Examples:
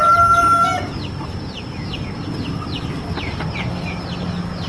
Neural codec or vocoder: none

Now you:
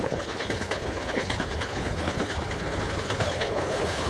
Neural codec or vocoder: codec, HILCodec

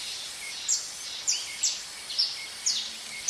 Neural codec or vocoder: none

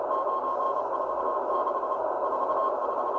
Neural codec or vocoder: none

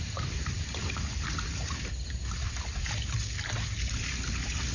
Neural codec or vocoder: none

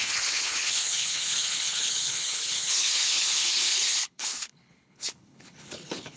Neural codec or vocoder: codec, HILCodec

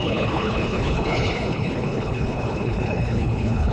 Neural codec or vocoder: codec, HILCodec